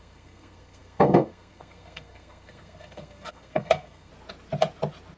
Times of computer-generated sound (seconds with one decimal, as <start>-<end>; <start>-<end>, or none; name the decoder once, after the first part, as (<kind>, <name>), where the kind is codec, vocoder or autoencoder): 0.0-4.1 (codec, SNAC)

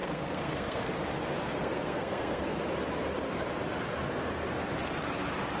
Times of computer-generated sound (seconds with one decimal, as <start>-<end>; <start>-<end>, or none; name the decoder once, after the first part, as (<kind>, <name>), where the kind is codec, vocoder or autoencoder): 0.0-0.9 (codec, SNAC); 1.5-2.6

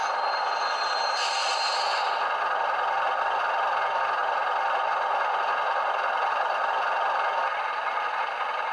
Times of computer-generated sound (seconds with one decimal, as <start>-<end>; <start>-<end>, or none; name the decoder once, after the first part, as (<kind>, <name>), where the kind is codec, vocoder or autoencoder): none

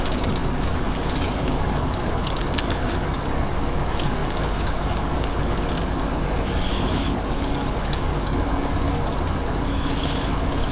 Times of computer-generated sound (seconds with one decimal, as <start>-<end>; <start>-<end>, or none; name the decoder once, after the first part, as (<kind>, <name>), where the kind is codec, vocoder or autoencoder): 0.0-10.7 (codec, DAC)

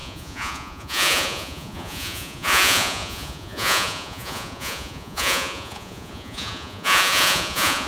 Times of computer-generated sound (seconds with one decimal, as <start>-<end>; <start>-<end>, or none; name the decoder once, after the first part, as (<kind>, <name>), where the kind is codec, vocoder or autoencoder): 0.0-7.9 (vocoder, Vocos)

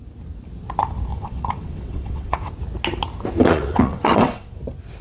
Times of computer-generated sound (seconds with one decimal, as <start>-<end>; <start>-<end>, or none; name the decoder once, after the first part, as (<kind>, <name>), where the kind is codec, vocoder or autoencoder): 1.1-2.5 (vocoder, WaveNeXt); 3.4-4.6